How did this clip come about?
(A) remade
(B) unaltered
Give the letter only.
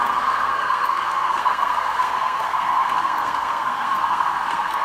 A